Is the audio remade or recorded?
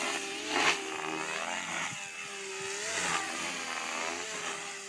recorded